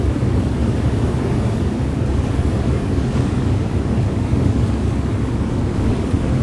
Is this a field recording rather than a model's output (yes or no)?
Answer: no